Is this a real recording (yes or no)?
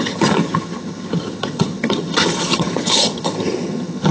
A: no